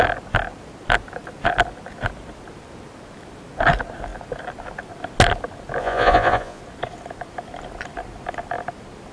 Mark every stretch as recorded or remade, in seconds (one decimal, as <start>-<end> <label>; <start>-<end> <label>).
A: 0.0-5.8 recorded; 5.8-6.6 remade; 6.6-9.1 recorded